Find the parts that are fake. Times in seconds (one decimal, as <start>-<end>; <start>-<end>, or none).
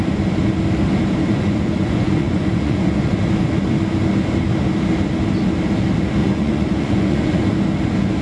1.3-3.2; 6.2-7.4